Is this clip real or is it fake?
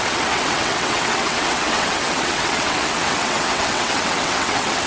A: fake